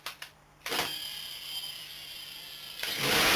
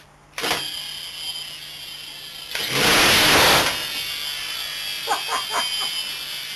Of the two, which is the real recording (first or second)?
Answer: second